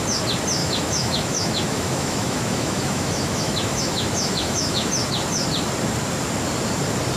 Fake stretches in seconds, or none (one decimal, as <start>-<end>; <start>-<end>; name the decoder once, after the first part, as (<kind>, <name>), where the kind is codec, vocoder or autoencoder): 0.6-4.9 (autoencoder, DAC-VAE)